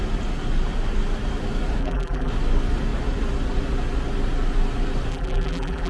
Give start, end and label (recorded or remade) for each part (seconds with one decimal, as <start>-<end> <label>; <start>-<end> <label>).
0.0-1.8 recorded; 1.8-2.3 remade; 2.3-5.1 recorded; 5.1-5.9 remade